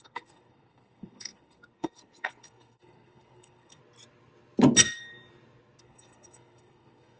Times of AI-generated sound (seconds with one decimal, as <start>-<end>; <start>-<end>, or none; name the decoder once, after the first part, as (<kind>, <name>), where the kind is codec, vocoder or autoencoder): 0.0-3.8 (codec, SNAC); 5.8-7.2